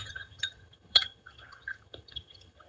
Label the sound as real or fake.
fake